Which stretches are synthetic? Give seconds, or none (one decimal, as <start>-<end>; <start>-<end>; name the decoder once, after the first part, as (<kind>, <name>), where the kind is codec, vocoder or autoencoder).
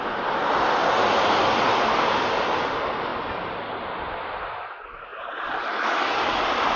none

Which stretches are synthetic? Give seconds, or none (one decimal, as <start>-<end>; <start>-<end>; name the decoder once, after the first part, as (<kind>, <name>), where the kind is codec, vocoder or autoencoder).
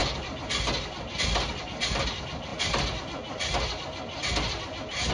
none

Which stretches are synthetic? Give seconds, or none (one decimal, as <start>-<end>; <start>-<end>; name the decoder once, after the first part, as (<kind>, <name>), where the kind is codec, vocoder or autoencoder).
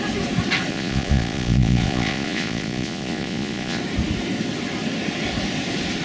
0.7-3.8 (vocoder, Vocos)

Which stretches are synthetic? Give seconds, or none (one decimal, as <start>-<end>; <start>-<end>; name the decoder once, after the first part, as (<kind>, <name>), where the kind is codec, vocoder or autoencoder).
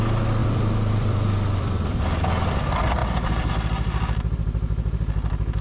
0.4-2.0 (vocoder, BigVGAN v2)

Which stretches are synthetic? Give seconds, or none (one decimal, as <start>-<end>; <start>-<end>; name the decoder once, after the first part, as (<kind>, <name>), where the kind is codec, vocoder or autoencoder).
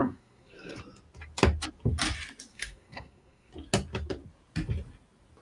0.0-0.8 (codec, SNAC); 2.5-3.5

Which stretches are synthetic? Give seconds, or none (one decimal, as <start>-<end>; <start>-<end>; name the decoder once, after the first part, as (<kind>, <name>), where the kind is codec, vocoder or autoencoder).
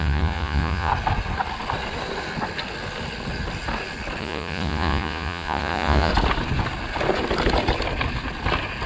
0.0-0.9 (vocoder, Vocos); 4.2-6.1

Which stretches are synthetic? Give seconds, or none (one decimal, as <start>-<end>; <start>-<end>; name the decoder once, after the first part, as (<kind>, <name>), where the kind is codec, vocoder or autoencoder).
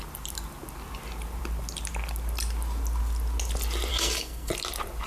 3.9-4.5 (codec, SNAC)